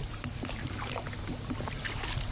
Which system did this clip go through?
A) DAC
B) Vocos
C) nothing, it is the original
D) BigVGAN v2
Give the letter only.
C